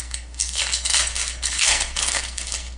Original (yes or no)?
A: no